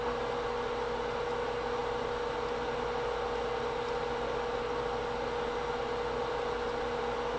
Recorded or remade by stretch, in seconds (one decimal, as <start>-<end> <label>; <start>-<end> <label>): 0.0-7.4 recorded